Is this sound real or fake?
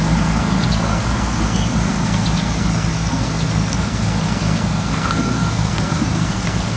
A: fake